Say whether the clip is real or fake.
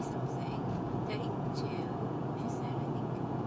fake